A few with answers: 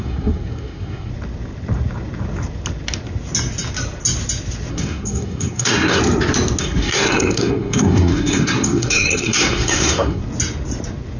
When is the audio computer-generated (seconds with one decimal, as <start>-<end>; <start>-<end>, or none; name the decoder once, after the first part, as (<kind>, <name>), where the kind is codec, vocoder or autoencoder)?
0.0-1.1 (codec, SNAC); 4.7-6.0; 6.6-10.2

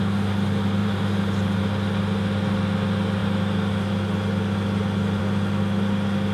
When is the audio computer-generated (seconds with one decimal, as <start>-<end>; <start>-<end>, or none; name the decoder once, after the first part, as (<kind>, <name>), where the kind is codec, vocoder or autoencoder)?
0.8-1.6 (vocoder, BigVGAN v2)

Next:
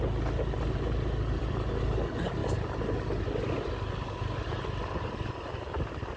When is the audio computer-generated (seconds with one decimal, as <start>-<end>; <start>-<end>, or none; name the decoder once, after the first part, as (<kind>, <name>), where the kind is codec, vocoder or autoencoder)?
none